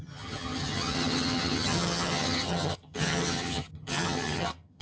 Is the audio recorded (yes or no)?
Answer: no